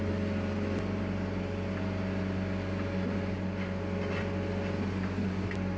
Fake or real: real